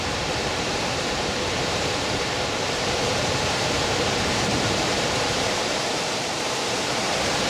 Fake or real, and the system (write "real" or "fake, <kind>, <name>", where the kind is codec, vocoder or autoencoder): fake, vocoder, BigVGAN v2